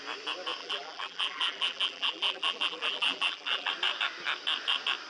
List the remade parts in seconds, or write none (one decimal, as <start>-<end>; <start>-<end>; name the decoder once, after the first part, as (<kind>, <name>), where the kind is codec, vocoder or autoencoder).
0.6-3.7 (vocoder, BigVGAN v2)